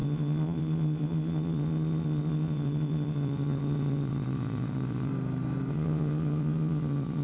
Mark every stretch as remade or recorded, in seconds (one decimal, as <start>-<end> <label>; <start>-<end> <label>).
0.0-5.1 remade; 5.1-5.7 recorded; 5.7-7.2 remade

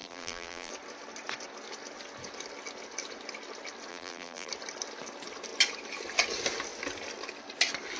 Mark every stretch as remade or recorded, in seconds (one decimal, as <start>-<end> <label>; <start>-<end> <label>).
0.0-0.7 remade; 0.7-3.9 recorded; 3.9-4.5 remade; 4.5-8.0 recorded

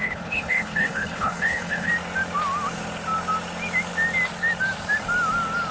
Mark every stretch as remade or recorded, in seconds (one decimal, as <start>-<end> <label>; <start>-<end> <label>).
0.0-1.9 remade; 1.9-5.7 recorded